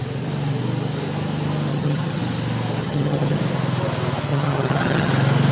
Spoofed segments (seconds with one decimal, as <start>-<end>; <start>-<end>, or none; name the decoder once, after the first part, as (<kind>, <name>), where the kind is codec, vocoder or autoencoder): 1.7-2.2 (vocoder, HiFi-GAN); 2.8-3.4; 4.3-5.1